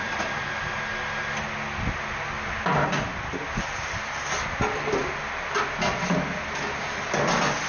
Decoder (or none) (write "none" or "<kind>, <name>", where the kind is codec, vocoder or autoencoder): none